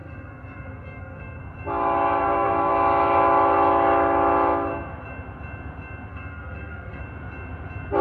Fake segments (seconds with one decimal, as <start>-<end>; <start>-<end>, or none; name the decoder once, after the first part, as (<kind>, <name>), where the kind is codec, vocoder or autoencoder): 0.0-1.4 (codec, SNAC); 2.2-2.7; 6.1-7.0